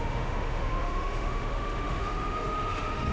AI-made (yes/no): yes